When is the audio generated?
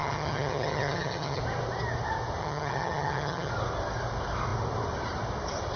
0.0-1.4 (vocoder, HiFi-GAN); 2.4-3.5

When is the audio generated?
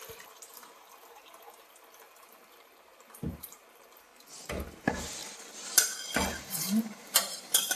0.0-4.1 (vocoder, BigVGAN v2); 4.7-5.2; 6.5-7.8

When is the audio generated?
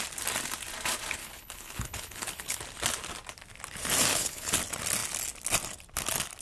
1.2-2.6 (codec, HILCodec); 4.1-4.6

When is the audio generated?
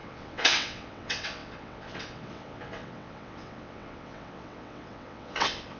0.0-5.8 (vocoder, WaveNeXt)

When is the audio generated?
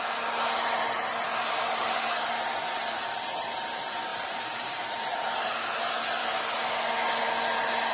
4.1-5.5 (vocoder, BigVGAN v2)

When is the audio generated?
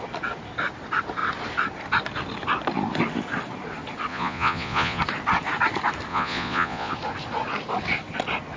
4.1-5.0 (vocoder, Vocos); 6.1-6.9